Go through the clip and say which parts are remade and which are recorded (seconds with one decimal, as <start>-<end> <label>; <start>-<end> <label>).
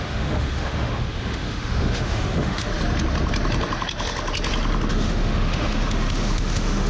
0.0-2.7 remade; 2.7-4.9 recorded; 4.9-6.9 remade